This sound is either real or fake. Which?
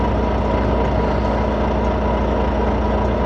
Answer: real